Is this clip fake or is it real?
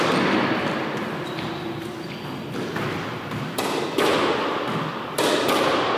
real